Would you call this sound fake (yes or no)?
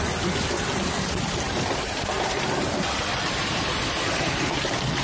no